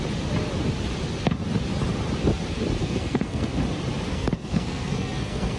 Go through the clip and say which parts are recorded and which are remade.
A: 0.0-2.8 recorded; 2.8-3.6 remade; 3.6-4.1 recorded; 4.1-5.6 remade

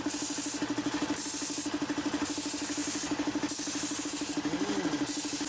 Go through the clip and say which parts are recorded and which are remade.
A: 0.0-5.5 recorded

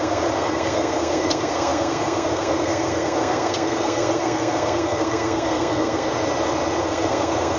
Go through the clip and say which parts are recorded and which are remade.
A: 0.0-6.1 remade; 6.1-6.8 recorded; 6.8-7.6 remade

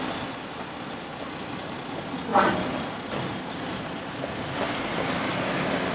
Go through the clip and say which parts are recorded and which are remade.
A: 0.0-5.9 recorded

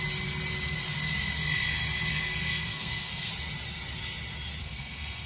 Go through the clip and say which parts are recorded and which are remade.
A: 0.0-2.1 recorded; 2.1-3.3 remade; 3.3-4.6 recorded; 4.6-5.3 remade

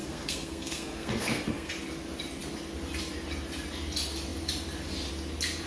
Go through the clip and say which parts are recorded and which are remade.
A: 0.0-1.7 remade; 1.7-5.7 recorded

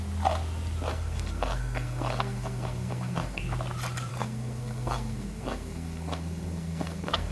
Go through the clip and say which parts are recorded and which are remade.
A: 0.0-0.9 recorded; 0.9-3.4 remade; 3.4-4.1 recorded; 4.1-7.3 remade